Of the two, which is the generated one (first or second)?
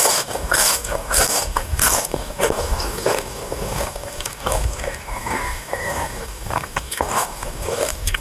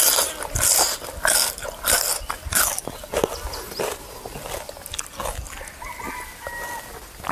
first